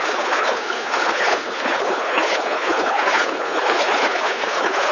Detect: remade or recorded remade